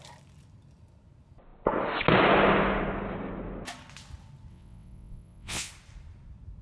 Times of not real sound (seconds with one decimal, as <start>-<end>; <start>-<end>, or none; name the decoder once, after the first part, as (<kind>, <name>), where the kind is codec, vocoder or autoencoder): 4.5-5.7 (vocoder, WaveNeXt)